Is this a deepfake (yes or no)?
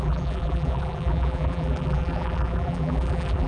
yes